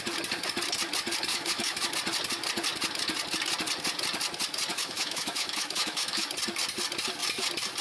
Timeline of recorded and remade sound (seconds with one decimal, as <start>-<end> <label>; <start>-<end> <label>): 0.0-1.3 recorded; 1.3-1.9 remade; 1.9-4.7 recorded; 4.7-6.3 remade; 6.3-7.8 recorded